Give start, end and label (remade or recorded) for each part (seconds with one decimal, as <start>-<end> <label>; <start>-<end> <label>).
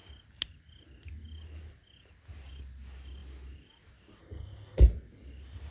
0.0-4.2 recorded; 4.2-4.8 remade; 4.8-5.7 recorded